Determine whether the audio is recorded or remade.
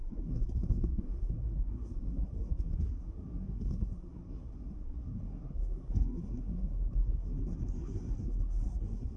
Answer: remade